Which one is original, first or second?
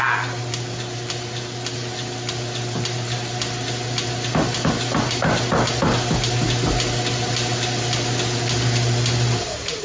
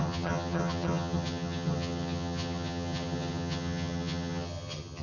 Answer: first